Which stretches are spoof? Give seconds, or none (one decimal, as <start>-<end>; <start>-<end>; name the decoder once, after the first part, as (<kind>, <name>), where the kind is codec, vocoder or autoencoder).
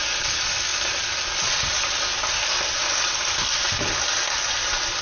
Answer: none